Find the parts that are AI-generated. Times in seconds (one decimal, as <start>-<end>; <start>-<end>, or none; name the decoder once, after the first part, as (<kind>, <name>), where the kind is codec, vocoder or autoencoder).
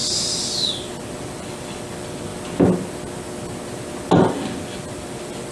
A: 0.7-2.3 (vocoder, BigVGAN v2); 4.2-5.5